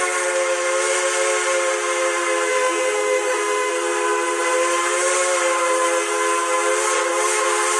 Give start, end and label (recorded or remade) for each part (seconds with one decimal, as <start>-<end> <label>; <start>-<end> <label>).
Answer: 0.0-2.5 recorded; 2.5-3.7 remade; 3.7-7.8 recorded